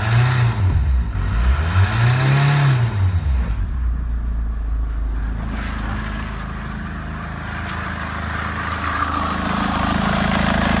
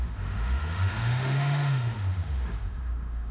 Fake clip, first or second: second